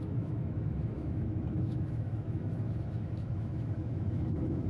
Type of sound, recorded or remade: remade